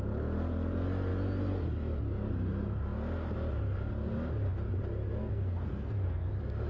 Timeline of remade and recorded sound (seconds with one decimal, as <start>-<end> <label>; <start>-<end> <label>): 0.0-5.2 recorded; 5.2-6.3 remade; 6.3-6.7 recorded